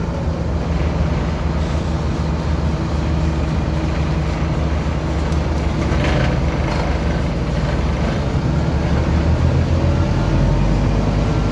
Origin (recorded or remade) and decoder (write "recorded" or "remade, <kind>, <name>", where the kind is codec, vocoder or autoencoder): recorded